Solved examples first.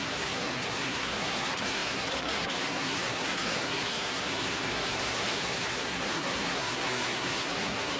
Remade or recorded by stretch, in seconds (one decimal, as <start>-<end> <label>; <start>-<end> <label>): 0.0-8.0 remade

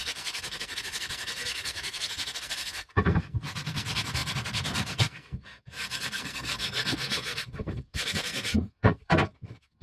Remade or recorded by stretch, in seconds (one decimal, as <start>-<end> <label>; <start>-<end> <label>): 0.0-9.8 remade

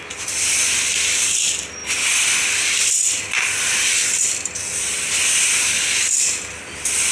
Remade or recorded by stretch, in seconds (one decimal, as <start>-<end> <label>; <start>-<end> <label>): 0.0-7.1 recorded

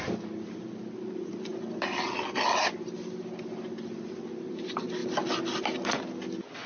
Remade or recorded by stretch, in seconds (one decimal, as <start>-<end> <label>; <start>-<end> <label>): 0.0-6.7 recorded